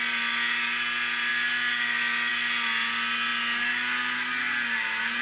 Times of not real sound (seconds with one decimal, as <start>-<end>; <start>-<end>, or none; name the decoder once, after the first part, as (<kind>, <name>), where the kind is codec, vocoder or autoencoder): none